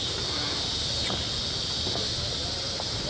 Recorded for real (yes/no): yes